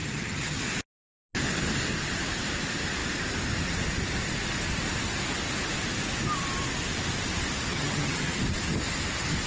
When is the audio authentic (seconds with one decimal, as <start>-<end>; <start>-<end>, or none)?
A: 0.6-7.7; 8.4-9.5